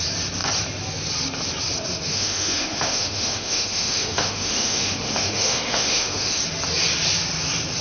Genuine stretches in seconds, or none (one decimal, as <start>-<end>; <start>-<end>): 0.0-2.1; 6.4-7.8